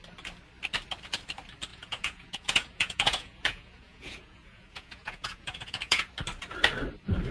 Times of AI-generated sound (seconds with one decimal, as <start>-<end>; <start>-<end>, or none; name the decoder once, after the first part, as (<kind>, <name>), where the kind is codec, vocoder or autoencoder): 1.7-6.1 (vocoder, Vocos)